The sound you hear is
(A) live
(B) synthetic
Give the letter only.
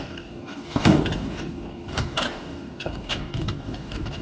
B